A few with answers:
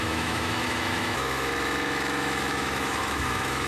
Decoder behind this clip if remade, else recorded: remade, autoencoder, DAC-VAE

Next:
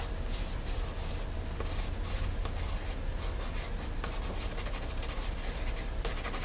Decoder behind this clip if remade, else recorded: recorded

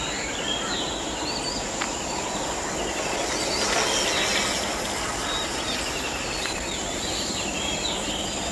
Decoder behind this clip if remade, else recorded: recorded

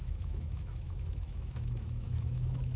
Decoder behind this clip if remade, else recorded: remade, autoencoder, DAC-VAE